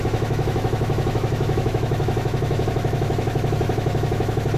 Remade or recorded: remade